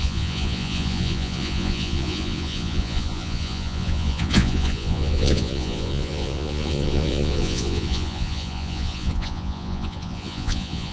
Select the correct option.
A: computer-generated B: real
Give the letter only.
A